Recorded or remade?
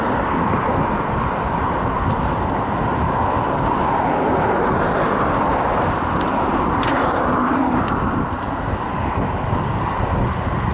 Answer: recorded